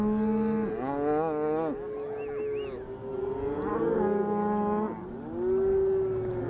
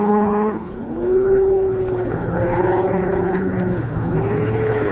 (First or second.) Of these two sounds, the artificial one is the second